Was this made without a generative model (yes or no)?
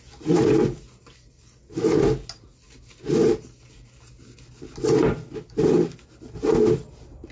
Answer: yes